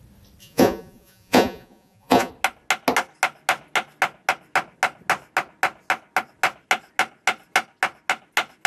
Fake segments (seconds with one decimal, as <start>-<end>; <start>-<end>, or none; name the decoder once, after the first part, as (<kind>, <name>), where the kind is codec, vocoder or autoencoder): 0.4-2.3 (vocoder, Vocos)

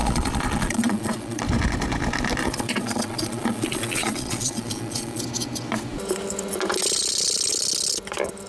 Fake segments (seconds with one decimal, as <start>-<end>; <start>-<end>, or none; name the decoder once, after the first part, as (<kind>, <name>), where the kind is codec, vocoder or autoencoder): 0.0-1.4 (vocoder, Vocos); 2.4-5.2

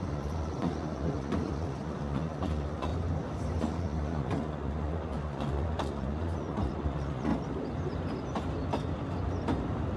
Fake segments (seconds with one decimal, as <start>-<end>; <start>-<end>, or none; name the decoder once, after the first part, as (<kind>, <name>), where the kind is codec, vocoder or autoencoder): 0.0-2.9 (vocoder, Vocos); 3.6-7.3

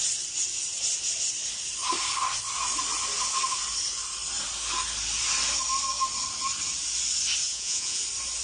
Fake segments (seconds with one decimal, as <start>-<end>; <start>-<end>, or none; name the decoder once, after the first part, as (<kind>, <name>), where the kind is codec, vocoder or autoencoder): 7.5-8.0 (vocoder, Vocos)

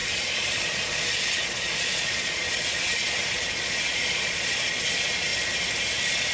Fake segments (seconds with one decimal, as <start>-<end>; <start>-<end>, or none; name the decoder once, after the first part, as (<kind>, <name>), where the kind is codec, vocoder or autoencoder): 0.0-5.3 (vocoder, Vocos)

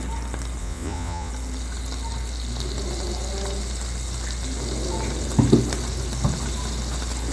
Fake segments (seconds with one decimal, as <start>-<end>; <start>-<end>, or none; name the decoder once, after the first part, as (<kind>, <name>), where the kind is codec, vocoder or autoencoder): 0.6-1.3 (vocoder, Vocos)

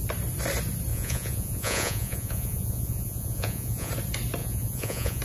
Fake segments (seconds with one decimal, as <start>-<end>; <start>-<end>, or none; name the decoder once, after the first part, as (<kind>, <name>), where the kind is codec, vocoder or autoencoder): 0.9-3.9 (vocoder, Vocos); 4.4-5.2

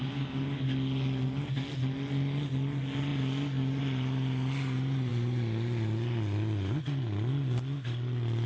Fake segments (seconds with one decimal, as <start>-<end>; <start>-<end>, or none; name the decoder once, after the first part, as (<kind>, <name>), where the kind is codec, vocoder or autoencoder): none